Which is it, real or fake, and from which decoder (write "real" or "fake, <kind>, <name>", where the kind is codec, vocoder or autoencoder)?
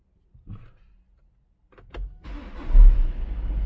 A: real